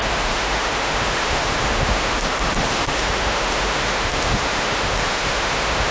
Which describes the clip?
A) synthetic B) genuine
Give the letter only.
A